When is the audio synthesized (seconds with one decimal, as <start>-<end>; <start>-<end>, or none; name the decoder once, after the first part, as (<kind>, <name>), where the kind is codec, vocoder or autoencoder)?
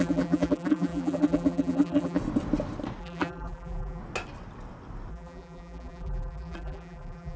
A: 0.0-2.2 (vocoder, BigVGAN v2); 3.0-4.0; 5.1-7.4